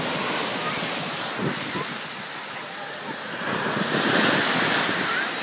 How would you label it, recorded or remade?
recorded